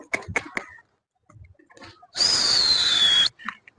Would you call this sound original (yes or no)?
yes